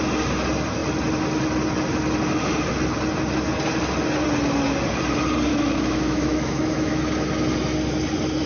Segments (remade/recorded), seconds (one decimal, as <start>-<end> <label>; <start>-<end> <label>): 0.0-5.5 recorded; 5.5-7.0 remade; 7.0-8.5 recorded